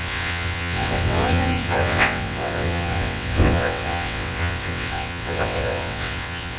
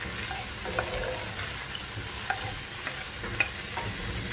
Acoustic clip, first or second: second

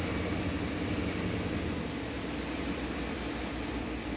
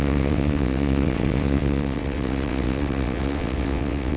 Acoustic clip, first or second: first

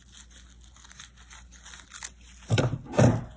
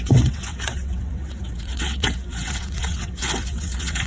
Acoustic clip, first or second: first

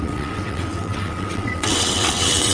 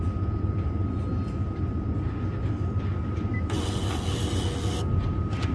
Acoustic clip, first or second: second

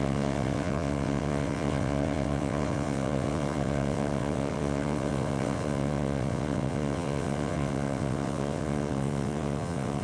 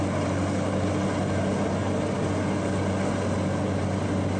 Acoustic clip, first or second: second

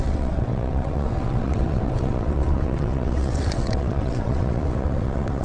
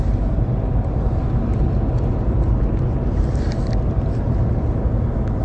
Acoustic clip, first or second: second